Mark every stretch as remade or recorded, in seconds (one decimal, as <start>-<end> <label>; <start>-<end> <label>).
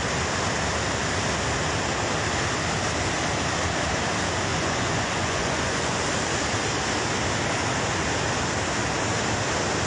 0.0-4.5 recorded; 4.5-6.0 remade; 6.0-9.9 recorded